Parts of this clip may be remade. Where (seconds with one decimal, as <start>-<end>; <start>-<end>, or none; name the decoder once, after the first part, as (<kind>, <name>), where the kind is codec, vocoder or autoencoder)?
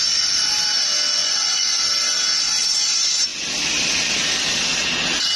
1.2-1.8 (vocoder, Vocos)